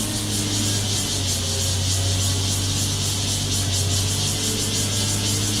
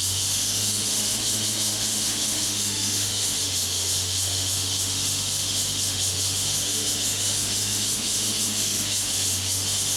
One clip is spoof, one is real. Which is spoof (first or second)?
second